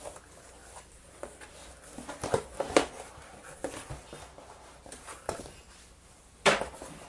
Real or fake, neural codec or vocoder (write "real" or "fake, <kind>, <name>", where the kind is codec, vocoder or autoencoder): real